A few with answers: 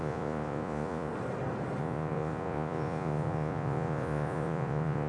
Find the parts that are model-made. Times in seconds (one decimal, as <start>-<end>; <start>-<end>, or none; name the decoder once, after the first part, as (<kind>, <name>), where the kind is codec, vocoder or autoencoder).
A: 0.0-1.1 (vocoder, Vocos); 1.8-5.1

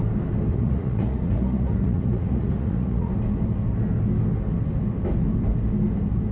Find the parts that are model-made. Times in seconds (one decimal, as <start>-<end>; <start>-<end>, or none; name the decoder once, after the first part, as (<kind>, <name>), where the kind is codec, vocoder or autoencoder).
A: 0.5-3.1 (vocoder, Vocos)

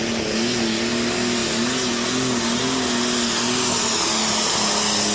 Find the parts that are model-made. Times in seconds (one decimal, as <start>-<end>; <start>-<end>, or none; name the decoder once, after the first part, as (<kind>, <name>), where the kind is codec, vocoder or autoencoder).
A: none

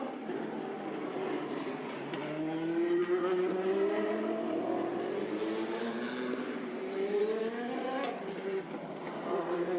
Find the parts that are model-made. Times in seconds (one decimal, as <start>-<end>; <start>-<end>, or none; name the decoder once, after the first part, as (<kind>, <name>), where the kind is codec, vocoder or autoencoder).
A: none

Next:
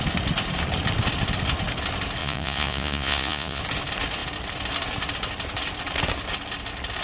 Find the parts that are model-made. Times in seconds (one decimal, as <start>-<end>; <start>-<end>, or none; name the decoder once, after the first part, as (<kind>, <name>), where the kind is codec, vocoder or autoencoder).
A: 2.2-3.6 (vocoder, Vocos)